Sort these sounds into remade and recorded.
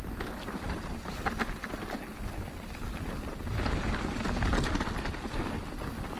recorded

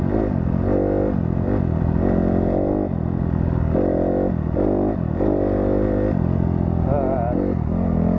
recorded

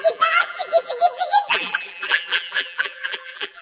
remade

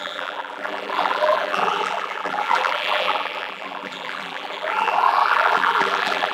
remade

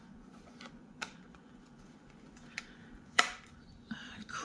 remade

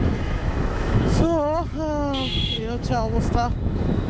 remade